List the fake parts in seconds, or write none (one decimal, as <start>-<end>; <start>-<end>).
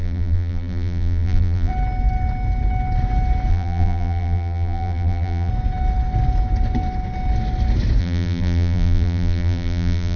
0.0-1.7; 3.5-5.5; 8.0-10.2